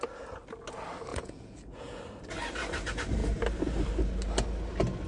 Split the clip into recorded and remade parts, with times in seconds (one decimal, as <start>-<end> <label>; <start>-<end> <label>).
0.0-1.1 recorded; 1.1-2.0 remade; 2.0-5.1 recorded